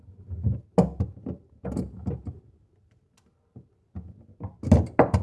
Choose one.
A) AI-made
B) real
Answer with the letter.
B